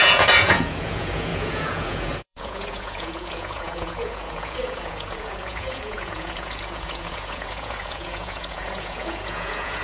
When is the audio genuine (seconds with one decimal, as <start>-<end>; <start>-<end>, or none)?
none